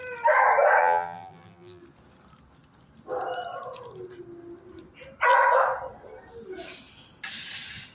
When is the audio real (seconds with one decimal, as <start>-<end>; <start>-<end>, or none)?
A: 0.0-0.8; 1.8-7.9